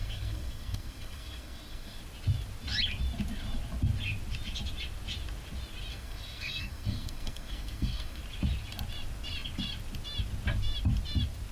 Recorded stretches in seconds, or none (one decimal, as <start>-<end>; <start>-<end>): 2.0-5.9; 8.2-11.5